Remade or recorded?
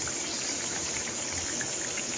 recorded